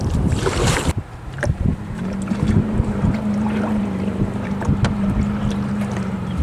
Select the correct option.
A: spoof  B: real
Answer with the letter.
A